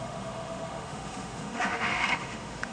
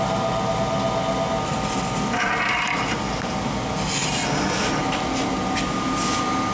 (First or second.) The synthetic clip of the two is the first